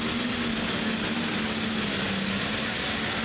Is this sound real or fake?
real